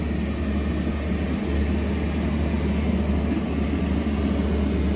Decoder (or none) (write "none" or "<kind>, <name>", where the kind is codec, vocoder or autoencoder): none